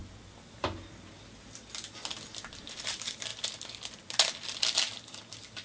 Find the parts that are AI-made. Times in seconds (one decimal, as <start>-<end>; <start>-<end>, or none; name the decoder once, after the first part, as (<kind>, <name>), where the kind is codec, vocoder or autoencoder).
none